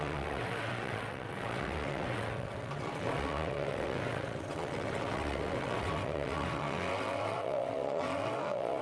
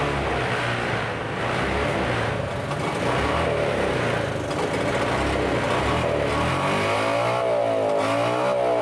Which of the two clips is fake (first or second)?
first